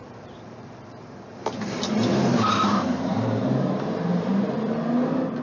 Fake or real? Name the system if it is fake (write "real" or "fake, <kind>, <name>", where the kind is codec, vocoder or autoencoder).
fake, vocoder, BigVGAN v2